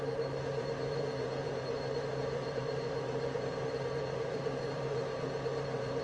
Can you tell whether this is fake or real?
fake